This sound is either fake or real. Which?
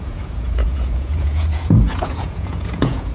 fake